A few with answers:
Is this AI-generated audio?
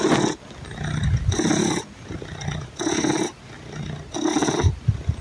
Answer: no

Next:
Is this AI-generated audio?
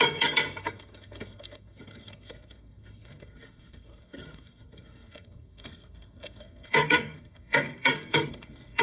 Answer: yes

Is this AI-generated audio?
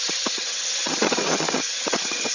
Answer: yes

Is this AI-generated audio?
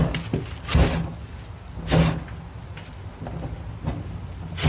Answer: no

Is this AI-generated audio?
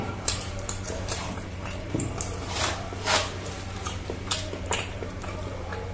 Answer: yes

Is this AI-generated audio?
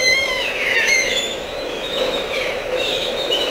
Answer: yes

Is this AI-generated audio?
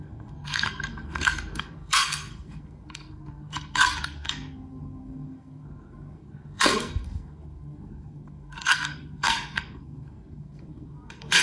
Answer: yes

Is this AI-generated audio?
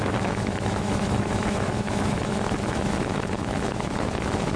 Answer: yes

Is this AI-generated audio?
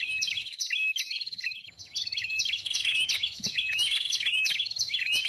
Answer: yes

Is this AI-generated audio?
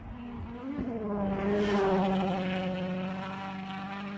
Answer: no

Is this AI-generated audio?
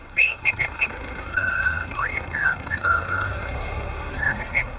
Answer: yes